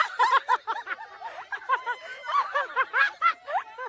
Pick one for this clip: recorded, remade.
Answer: remade